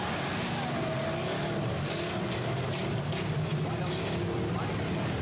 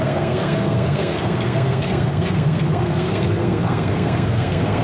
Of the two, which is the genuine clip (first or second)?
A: first